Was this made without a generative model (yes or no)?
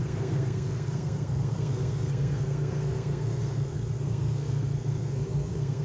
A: no